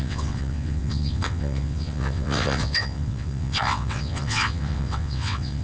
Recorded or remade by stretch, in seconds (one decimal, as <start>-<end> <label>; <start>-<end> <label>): 0.0-5.6 remade